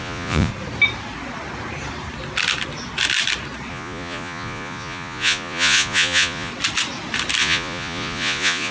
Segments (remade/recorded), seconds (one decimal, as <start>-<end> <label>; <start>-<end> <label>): 0.0-0.5 remade; 0.5-3.7 recorded; 3.7-6.5 remade; 6.5-7.4 recorded; 7.4-8.7 remade